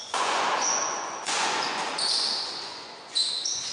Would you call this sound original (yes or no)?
no